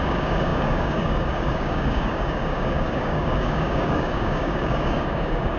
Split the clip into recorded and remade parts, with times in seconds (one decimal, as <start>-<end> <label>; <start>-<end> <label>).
0.0-5.6 remade